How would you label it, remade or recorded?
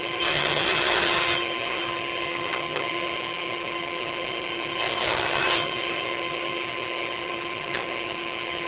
remade